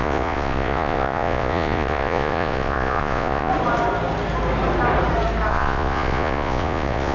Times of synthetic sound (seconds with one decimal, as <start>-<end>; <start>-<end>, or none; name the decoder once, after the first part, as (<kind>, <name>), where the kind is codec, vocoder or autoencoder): 0.0-3.5 (vocoder, Vocos); 5.5-7.1